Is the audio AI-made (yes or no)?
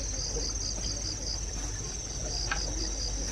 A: no